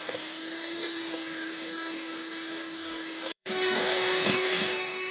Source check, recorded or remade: remade